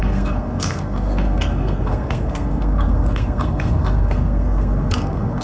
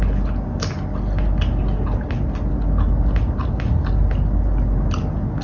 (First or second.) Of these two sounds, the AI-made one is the first